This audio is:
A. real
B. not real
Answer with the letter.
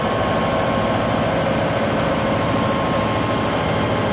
A